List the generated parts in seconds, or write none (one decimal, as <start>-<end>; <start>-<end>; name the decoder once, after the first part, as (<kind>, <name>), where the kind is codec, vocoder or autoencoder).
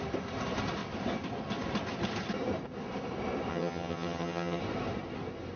3.5-4.6 (vocoder, HiFi-GAN)